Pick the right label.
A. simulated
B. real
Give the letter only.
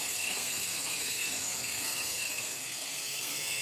A